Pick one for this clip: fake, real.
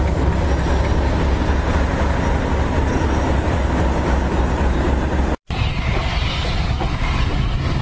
real